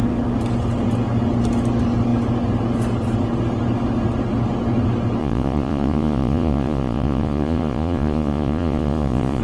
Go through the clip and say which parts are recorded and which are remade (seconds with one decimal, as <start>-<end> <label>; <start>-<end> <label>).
0.0-5.2 recorded; 5.2-9.4 remade